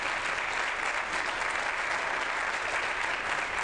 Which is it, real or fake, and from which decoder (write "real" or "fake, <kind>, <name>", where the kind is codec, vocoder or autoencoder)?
real